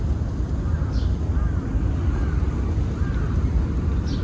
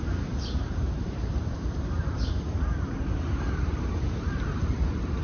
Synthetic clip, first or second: second